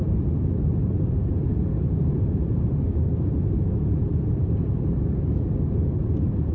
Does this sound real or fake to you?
fake